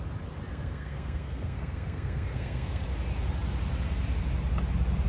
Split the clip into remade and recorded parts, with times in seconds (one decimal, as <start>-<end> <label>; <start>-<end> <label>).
0.0-0.5 recorded; 0.5-2.8 remade; 2.8-5.1 recorded